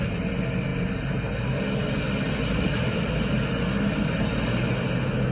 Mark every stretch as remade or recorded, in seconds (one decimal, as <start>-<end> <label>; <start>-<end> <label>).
0.0-5.3 recorded